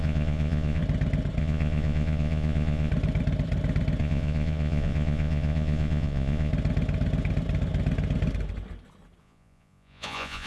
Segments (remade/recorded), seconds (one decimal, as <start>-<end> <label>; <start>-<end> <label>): 0.0-0.8 remade; 0.8-1.4 recorded; 1.4-2.9 remade; 2.9-4.0 recorded; 4.0-6.5 remade; 6.5-9.2 recorded; 9.2-10.5 remade